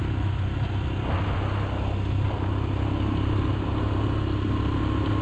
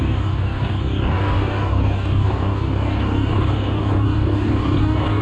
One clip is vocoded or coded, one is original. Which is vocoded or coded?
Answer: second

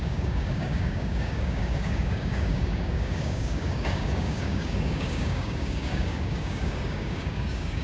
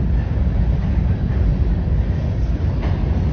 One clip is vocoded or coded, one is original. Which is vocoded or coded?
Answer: first